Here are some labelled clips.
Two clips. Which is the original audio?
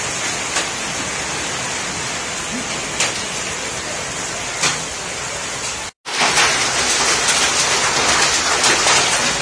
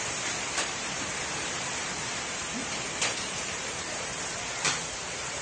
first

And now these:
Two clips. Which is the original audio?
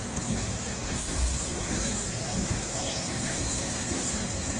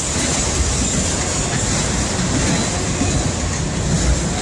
second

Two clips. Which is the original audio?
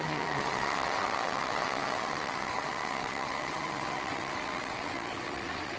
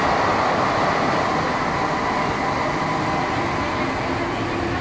second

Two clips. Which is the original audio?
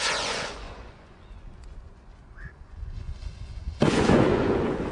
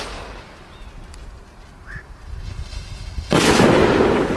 second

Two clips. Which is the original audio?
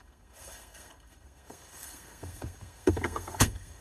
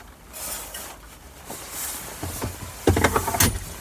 second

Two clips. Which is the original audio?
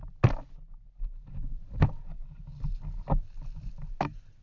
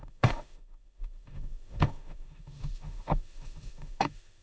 first